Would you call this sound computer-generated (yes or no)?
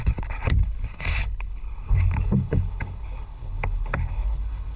yes